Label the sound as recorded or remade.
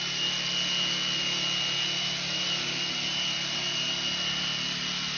recorded